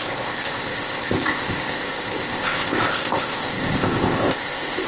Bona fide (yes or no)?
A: no